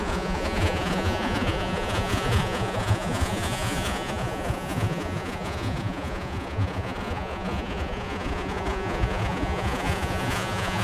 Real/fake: fake